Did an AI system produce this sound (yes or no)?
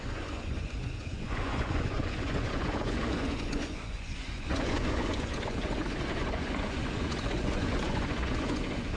yes